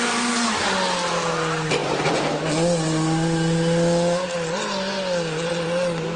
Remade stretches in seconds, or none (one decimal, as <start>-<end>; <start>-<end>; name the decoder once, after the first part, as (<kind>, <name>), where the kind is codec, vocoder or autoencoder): none

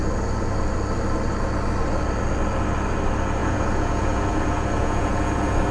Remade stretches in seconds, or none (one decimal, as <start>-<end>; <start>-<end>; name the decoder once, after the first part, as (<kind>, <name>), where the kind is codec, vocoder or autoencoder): 3.4-5.7 (vocoder, Vocos)

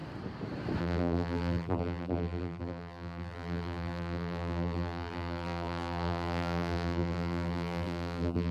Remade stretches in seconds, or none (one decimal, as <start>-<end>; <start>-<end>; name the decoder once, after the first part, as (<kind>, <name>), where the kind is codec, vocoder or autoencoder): 0.8-8.5 (vocoder, BigVGAN v2)

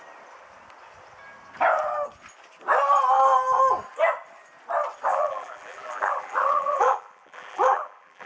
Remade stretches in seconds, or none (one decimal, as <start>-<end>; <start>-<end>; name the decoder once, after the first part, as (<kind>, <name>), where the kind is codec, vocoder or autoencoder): 5.1-8.3 (vocoder, BigVGAN v2)

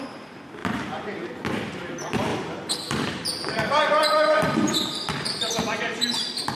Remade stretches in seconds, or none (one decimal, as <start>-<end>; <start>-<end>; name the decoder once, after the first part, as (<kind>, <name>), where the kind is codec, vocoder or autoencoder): 0.6-1.2 (vocoder, BigVGAN v2); 2.3-6.5